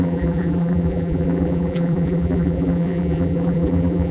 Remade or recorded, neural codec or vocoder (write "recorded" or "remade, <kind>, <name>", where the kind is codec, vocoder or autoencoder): remade, vocoder, BigVGAN v2